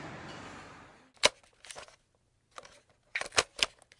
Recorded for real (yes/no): yes